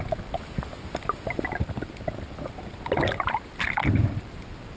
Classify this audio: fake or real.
real